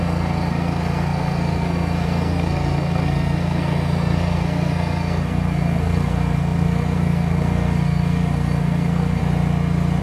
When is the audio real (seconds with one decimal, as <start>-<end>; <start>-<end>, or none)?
9.2-10.0